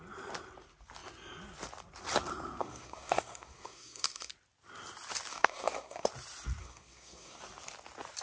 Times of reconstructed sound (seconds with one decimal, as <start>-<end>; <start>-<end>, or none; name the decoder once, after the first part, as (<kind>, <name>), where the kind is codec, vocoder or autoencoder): 2.6-4.3 (codec, SNAC); 5.3-6.1; 6.6-7.4